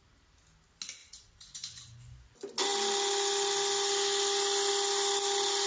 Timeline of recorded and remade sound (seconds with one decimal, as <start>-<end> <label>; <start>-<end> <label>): 0.0-1.0 recorded; 1.0-2.3 remade; 2.3-5.7 recorded

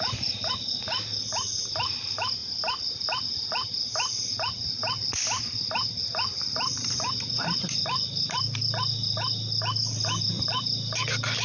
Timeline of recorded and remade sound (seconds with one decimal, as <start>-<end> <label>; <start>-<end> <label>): 0.0-11.4 remade

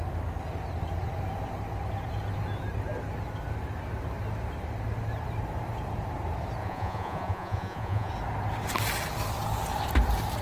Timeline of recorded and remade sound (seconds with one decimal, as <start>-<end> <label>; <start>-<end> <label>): 0.0-6.6 recorded; 6.6-8.1 remade; 8.1-10.4 recorded

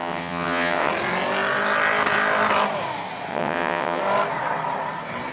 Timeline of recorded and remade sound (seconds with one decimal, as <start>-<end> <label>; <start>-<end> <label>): 0.0-0.9 remade; 0.9-3.3 recorded; 3.3-4.0 remade; 4.0-5.3 recorded